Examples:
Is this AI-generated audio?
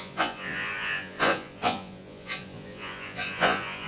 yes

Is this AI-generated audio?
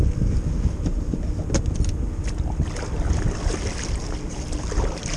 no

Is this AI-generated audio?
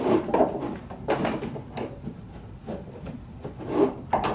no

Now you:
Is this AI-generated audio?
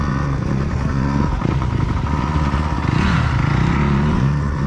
yes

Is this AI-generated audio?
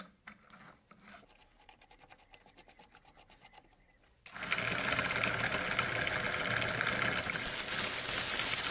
no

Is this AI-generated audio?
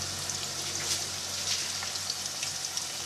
no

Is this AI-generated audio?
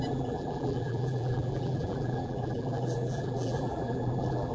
yes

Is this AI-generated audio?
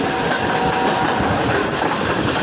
no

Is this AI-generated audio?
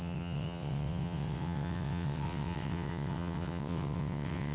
yes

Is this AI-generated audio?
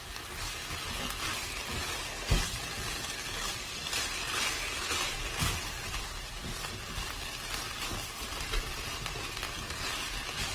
no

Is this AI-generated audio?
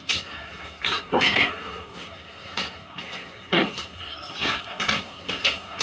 yes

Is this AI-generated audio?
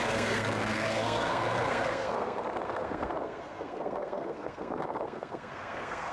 yes